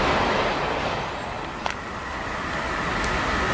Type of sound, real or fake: real